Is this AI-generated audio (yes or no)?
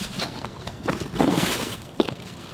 yes